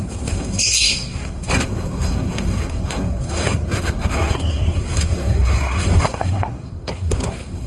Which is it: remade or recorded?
remade